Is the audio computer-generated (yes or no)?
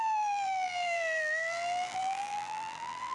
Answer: yes